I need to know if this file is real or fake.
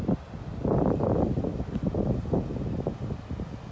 real